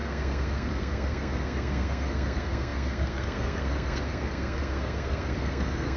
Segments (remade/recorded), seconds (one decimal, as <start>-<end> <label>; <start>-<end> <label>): 0.0-6.0 remade